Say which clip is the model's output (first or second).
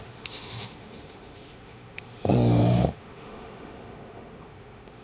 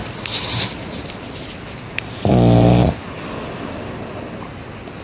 first